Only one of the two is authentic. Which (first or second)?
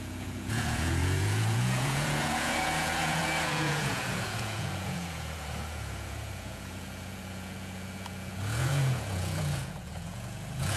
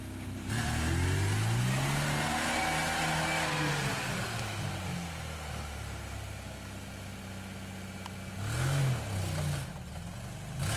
second